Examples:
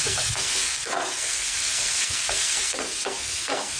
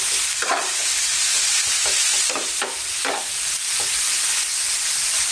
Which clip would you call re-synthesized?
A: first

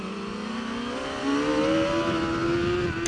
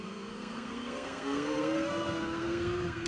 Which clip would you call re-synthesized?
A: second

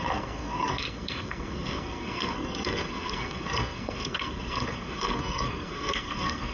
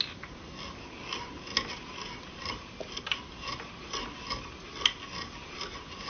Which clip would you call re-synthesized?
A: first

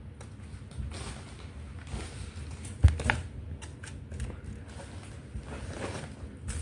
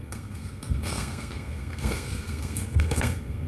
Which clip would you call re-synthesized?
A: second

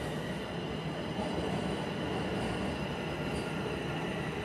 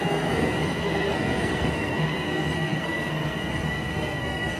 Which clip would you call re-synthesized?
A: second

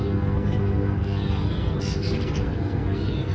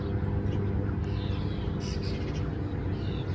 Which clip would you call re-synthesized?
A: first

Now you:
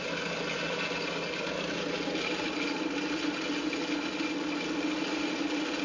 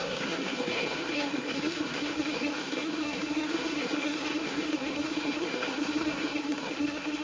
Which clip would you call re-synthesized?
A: second